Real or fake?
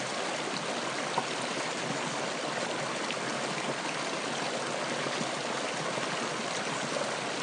real